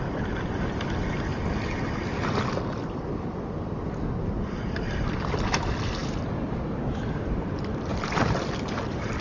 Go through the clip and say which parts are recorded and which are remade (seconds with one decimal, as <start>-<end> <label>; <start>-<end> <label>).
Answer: 0.0-9.2 recorded